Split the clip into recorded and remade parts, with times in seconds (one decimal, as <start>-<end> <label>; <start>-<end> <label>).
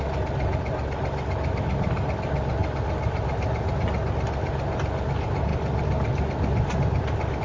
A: 0.0-7.4 recorded